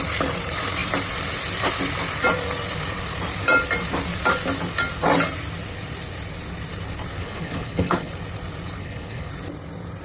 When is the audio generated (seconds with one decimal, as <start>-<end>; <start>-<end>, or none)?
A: 7.2-8.1; 8.8-9.3